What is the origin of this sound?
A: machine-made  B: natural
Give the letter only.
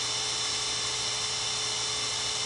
B